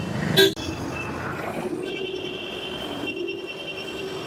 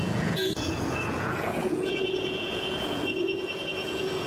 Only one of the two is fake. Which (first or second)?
second